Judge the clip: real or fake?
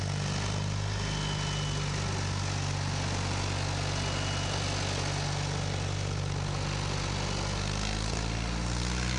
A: real